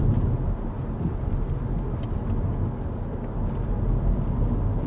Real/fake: real